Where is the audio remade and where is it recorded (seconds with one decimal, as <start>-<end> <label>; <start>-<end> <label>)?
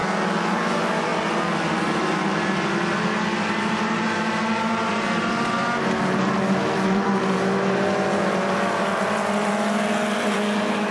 0.0-0.5 recorded; 0.5-10.9 remade